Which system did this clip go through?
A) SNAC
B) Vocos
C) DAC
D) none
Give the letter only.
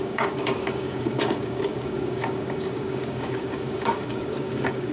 C